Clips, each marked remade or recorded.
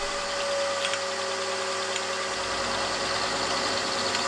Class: recorded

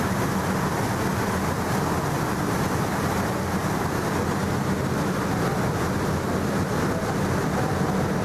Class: recorded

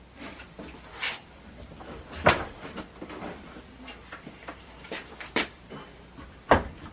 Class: remade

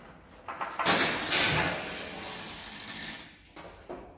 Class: recorded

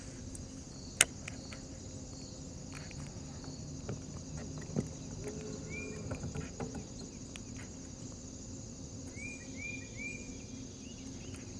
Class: recorded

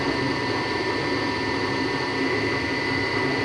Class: recorded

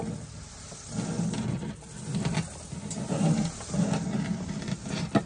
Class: recorded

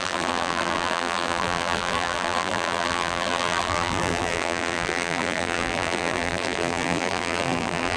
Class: remade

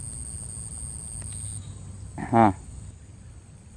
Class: recorded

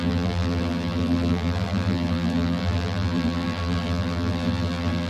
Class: remade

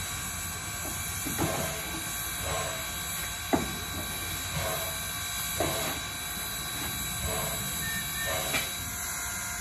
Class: recorded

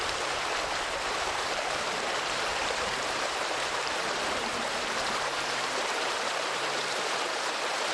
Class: remade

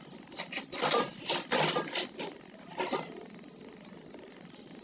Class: remade